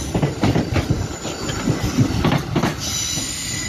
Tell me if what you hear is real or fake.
real